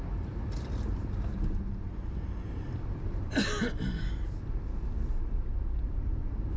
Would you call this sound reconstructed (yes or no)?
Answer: no